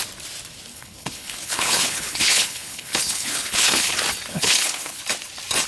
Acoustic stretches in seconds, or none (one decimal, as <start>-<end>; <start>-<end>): 0.0-0.7; 3.9-4.3; 5.0-5.7